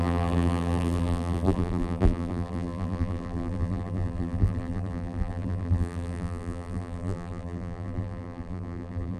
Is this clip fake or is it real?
fake